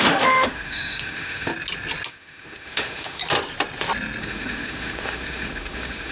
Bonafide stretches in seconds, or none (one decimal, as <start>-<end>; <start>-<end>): 1.5-2.1; 3.2-4.2